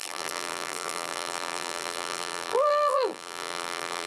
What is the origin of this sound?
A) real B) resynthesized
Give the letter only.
B